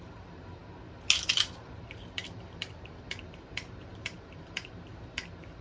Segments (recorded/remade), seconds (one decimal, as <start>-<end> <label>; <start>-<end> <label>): 0.0-0.6 remade; 0.6-1.3 recorded; 1.3-5.6 remade

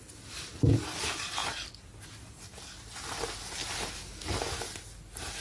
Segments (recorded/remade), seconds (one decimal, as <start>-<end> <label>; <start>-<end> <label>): 0.0-5.4 recorded